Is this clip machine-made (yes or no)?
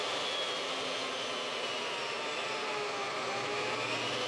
no